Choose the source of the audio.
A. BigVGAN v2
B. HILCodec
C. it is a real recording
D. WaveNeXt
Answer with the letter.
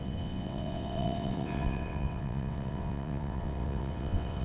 D